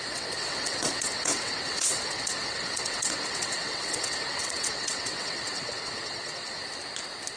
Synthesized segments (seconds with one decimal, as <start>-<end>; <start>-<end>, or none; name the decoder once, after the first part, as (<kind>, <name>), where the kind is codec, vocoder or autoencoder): 0.0-6.6 (vocoder, WaveNeXt)